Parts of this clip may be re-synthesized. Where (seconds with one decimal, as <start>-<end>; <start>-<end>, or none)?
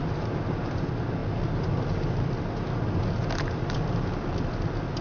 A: none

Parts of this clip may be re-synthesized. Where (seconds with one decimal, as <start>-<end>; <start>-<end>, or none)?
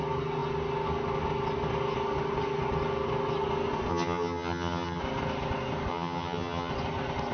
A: 3.9-5.0; 5.9-6.7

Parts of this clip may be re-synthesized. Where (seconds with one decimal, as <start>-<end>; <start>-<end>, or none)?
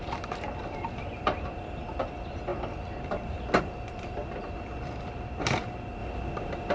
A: none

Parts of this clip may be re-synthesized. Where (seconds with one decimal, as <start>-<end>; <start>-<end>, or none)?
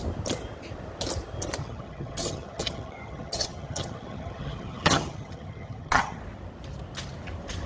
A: 1.6-6.2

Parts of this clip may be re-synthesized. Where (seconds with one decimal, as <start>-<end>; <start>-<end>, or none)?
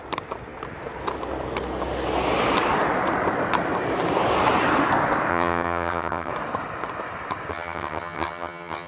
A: 5.3-6.3; 7.5-8.9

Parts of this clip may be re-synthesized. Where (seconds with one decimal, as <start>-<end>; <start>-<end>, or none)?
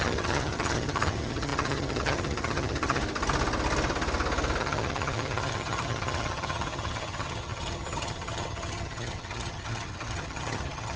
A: 0.0-3.0; 4.6-11.0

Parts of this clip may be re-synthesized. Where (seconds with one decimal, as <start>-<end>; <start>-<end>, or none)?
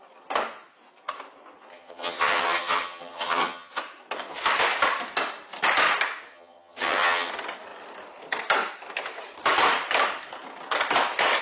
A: 1.7-3.8; 6.3-7.3